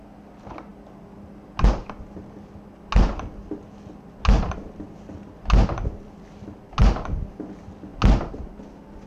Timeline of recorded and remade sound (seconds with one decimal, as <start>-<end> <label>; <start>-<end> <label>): 0.0-9.1 recorded